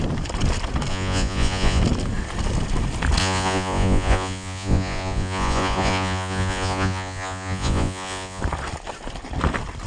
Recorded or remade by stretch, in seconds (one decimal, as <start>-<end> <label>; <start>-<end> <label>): 0.0-0.9 recorded; 0.9-1.8 remade; 1.8-3.2 recorded; 3.2-8.4 remade; 8.4-9.9 recorded